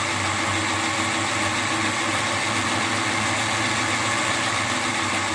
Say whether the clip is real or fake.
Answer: real